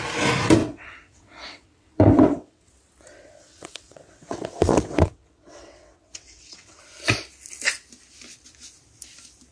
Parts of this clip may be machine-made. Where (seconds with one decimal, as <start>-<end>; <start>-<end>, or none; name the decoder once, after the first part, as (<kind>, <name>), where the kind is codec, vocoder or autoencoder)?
0.6-2.7 (vocoder, WaveNeXt); 3.1-6.8